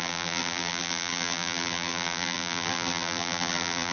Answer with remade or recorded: remade